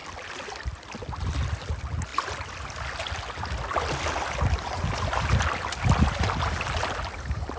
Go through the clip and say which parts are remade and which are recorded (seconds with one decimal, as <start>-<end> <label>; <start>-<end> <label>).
0.0-7.6 recorded